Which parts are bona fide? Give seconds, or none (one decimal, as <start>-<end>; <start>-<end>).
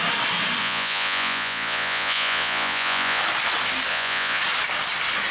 0.0-0.6; 3.2-3.9; 4.4-5.3